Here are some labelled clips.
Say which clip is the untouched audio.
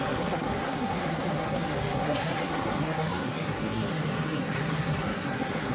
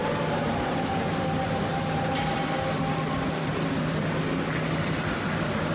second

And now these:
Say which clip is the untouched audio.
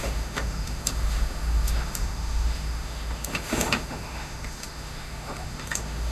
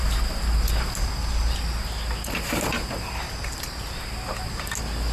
second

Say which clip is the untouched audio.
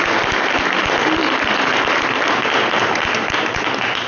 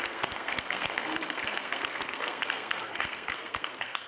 first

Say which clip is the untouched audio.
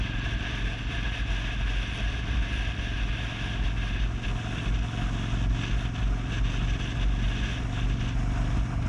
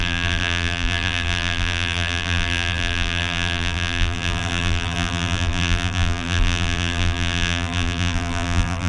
first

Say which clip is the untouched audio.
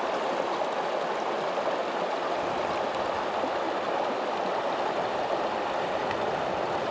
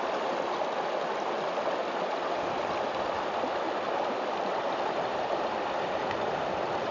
first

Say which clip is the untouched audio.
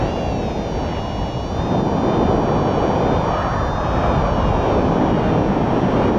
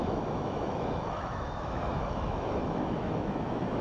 first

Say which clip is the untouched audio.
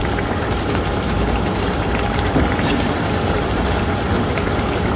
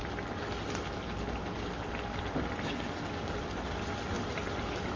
second